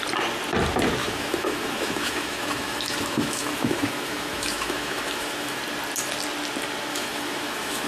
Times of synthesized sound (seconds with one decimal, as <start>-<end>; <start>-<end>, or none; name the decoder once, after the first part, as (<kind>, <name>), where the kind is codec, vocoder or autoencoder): 1.0-5.6 (autoencoder, DAC-VAE); 6.9-7.9